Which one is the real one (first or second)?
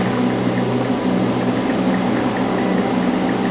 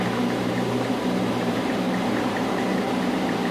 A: first